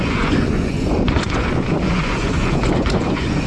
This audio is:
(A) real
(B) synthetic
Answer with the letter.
B